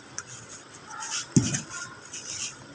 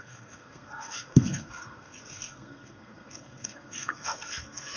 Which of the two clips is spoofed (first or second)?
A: second